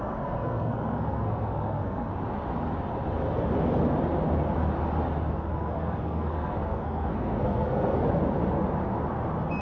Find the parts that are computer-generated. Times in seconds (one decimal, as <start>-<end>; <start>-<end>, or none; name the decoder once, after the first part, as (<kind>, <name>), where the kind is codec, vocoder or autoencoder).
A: 0.0-2.1 (codec, SNAC); 5.3-8.0

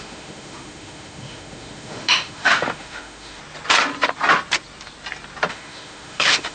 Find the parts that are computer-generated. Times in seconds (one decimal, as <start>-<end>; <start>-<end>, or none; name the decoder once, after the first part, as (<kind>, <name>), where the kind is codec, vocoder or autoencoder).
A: 0.0-3.4 (autoencoder, DAC-VAE); 5.5-6.5